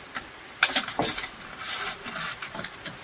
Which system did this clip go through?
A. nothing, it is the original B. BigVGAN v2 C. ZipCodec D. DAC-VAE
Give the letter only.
B